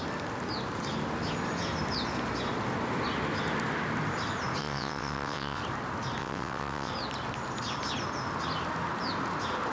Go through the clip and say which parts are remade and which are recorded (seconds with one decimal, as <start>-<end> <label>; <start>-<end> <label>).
0.0-4.6 recorded; 4.6-5.6 remade; 5.6-6.2 recorded; 6.2-6.9 remade; 6.9-9.7 recorded